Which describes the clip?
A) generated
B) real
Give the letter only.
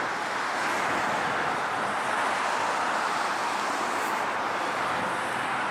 B